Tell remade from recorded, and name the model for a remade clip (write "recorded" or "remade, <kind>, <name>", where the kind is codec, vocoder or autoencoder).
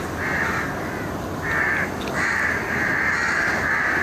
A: recorded